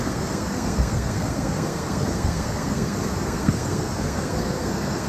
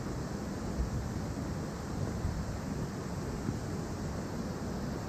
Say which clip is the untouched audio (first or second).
second